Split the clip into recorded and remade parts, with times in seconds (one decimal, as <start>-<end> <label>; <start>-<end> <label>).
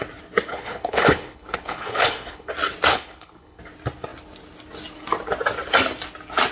0.0-0.5 recorded; 0.5-2.5 remade; 2.5-2.9 recorded; 2.9-3.6 remade; 3.6-6.5 recorded